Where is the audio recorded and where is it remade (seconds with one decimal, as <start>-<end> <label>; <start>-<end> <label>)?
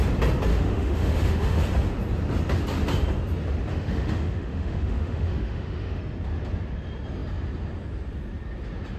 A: 0.0-0.5 recorded; 0.5-1.6 remade; 1.6-3.7 recorded; 3.7-6.0 remade; 6.0-9.0 recorded